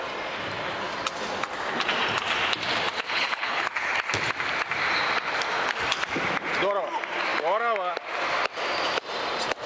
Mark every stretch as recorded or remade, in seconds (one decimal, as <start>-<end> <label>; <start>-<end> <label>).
0.0-3.0 recorded; 3.0-3.9 remade; 3.9-9.7 recorded